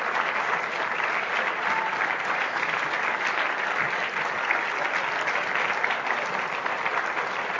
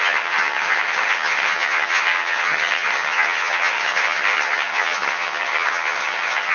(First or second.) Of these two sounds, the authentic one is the first